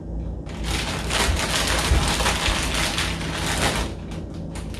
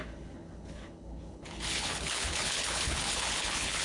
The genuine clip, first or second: first